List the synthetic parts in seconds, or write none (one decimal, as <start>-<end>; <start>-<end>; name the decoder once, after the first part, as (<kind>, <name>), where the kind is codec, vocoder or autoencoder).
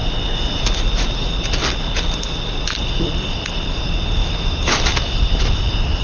4.2-4.8 (autoencoder, DAC-VAE)